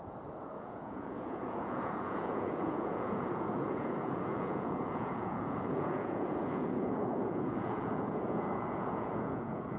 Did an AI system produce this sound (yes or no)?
yes